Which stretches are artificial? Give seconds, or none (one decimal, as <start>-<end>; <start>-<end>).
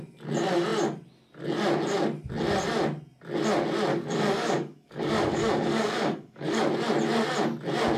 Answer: 3.9-6.6